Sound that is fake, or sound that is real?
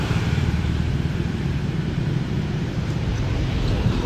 fake